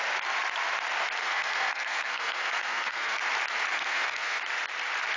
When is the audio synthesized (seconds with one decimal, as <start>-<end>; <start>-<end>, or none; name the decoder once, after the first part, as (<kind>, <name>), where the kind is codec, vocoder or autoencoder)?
1.2-3.2 (codec, SNAC); 3.7-4.4